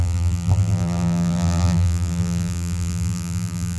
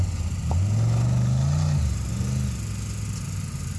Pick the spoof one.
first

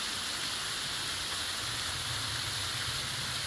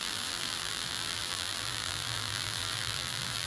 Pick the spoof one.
second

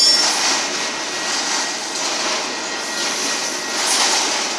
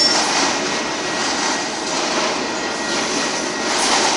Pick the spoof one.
second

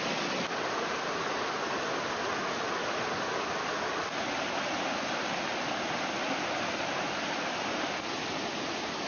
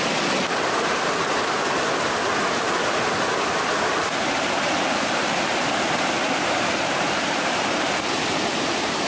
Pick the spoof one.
second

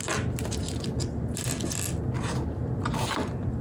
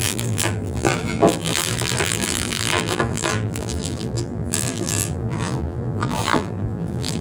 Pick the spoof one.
second